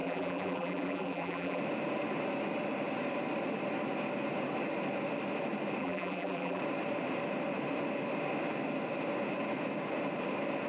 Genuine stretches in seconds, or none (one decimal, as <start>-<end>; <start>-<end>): 1.6-5.8; 6.6-10.7

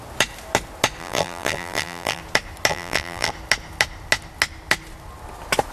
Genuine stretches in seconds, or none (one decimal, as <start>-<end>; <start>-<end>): 0.0-1.0; 2.2-2.7; 3.3-5.7

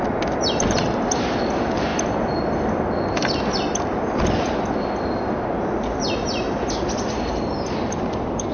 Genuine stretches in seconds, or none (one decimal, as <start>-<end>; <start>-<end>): 0.0-8.5

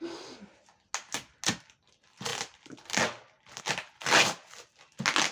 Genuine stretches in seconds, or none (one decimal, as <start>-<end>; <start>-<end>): 0.0-5.3

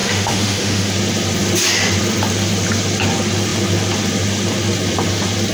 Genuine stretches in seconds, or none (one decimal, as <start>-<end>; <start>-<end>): 0.9-5.5

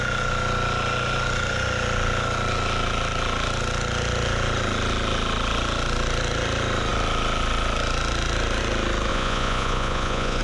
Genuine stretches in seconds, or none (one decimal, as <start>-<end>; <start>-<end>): 0.0-9.1

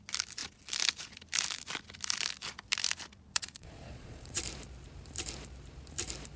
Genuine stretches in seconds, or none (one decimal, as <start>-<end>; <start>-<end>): 0.0-3.3; 4.4-6.4

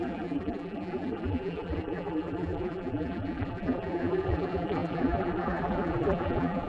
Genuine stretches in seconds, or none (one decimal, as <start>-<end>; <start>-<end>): none